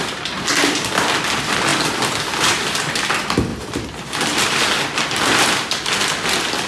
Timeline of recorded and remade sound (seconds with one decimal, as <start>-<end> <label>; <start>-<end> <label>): 0.0-6.7 recorded